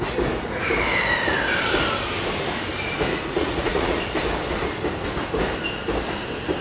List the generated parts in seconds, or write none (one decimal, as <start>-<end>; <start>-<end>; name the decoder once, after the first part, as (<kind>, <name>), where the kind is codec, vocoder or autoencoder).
3.1-4.0 (vocoder, Vocos)